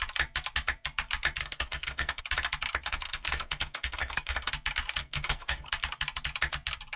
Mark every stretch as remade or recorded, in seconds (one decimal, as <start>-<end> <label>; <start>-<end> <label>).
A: 0.0-1.4 recorded; 1.4-2.2 remade; 2.2-2.9 recorded; 2.9-4.5 remade; 4.5-5.0 recorded; 5.0-5.7 remade; 5.7-7.0 recorded